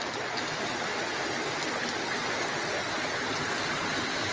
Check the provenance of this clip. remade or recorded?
recorded